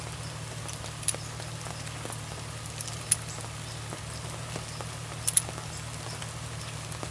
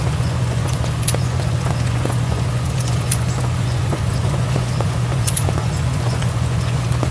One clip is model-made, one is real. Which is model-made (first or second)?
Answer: second